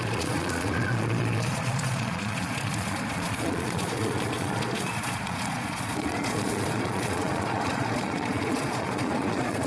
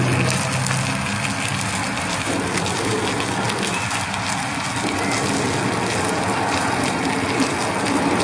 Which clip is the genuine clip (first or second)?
second